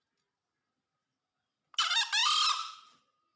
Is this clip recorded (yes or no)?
yes